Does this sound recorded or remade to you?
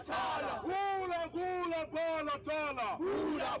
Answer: recorded